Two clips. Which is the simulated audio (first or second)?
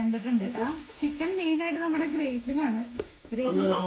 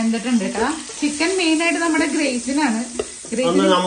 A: first